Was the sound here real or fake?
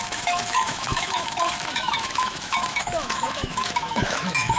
fake